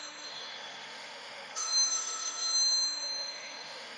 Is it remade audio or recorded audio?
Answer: remade